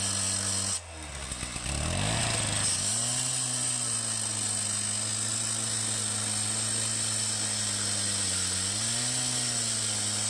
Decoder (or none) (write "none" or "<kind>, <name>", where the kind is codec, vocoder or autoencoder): none